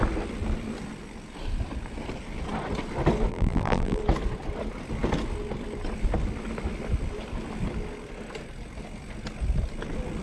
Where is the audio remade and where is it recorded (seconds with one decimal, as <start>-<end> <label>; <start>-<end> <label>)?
0.0-3.3 recorded; 3.3-4.0 remade; 4.0-10.2 recorded